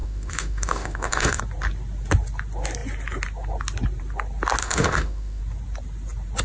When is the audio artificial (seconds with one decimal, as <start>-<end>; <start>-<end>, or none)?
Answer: 0.0-1.4; 4.6-5.4

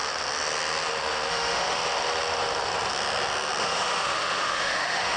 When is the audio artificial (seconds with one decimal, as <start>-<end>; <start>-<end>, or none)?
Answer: 1.3-1.8; 3.6-5.2